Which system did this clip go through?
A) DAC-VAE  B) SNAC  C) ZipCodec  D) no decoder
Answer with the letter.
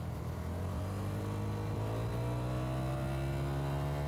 D